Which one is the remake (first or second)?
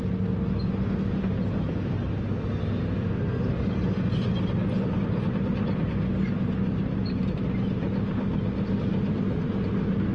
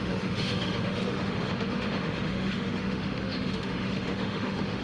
second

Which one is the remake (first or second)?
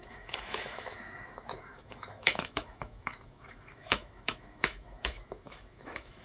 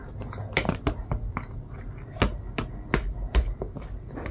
first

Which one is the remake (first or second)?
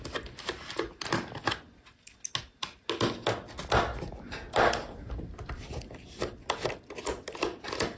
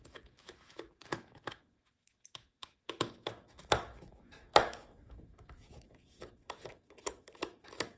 second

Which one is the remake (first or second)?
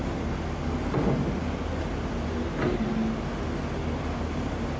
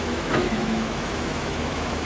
second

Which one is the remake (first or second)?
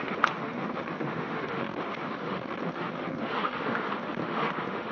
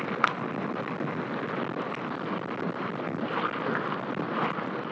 first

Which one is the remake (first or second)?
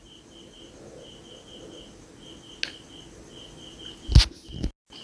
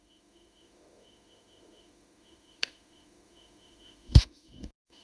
second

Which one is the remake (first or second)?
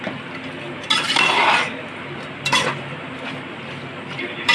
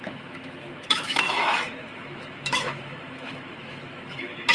second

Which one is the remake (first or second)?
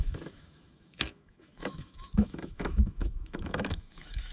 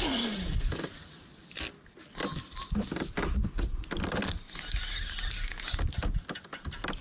first